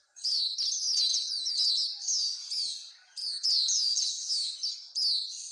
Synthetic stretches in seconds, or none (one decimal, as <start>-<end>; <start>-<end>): 1.1-1.7; 3.2-4.3